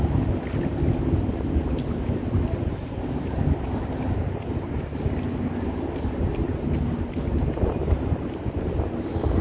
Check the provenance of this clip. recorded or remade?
recorded